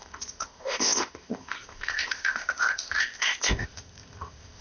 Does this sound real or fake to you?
fake